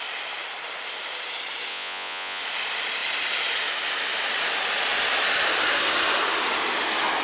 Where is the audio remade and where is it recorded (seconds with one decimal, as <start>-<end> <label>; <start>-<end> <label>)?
0.0-1.7 recorded; 1.7-2.4 remade; 2.4-7.2 recorded